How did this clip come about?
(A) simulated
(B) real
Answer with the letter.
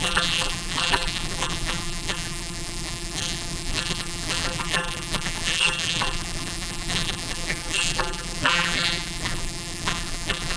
A